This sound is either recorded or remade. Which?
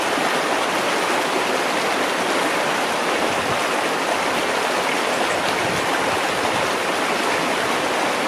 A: recorded